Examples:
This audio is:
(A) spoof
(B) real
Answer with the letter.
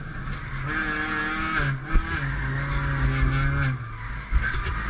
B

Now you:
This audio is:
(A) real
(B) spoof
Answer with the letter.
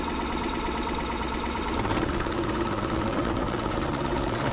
B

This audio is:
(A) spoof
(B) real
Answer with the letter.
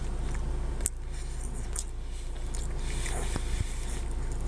B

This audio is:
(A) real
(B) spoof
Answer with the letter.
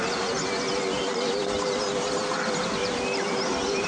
A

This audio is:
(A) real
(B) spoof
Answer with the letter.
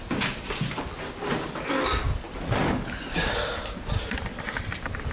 A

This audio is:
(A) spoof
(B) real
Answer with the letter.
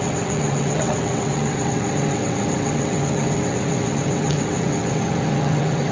A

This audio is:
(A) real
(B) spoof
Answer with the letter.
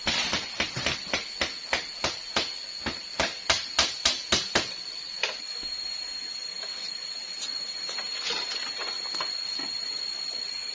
A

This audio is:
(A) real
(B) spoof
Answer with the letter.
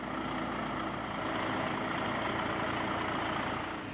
A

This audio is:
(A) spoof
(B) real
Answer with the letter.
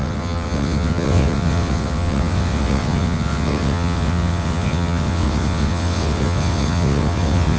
A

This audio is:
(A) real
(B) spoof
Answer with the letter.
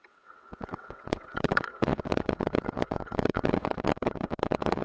B